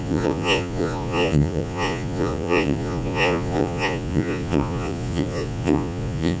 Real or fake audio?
fake